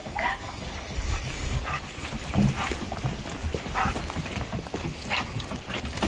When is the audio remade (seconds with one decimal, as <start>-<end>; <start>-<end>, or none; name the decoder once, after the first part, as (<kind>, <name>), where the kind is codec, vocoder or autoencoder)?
0.0-1.6 (codec, DAC)